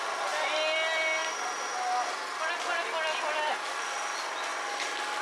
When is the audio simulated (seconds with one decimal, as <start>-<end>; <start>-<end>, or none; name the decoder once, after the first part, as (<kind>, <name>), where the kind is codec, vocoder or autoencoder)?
none